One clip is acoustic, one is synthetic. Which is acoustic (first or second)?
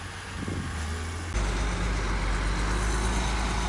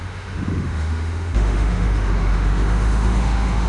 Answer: first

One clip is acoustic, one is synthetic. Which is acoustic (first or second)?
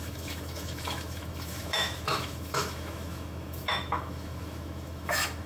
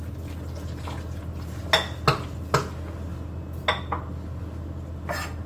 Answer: second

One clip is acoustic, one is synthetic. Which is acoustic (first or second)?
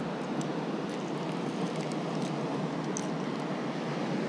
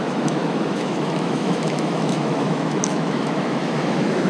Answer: first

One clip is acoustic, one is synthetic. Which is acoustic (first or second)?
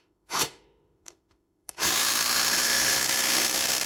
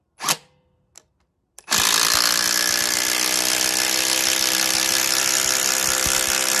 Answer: second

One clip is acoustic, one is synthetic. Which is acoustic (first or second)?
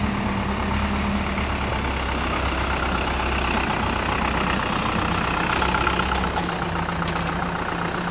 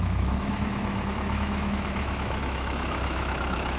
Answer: first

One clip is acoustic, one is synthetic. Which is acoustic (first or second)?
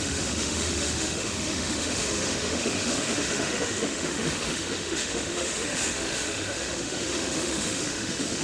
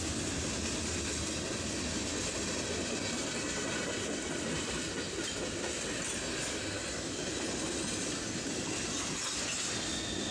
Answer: second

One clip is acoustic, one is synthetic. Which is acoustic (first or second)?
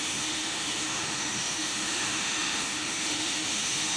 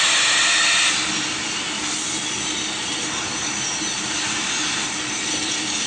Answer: second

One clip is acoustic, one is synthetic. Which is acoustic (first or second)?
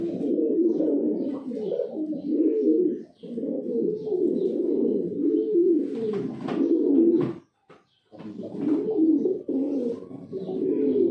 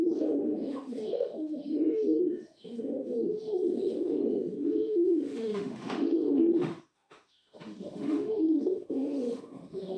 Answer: first